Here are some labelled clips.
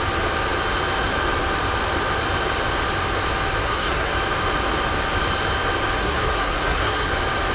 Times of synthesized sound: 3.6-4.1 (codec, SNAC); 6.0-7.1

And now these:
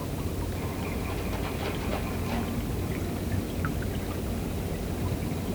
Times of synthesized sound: none